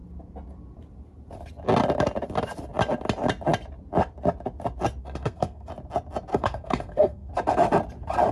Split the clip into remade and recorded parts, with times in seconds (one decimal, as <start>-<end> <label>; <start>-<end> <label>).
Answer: 0.0-5.0 recorded; 5.0-5.7 remade; 5.7-6.3 recorded; 6.3-7.3 remade; 7.3-8.3 recorded